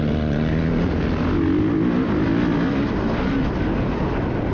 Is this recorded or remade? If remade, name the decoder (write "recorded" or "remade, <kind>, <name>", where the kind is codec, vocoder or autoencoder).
recorded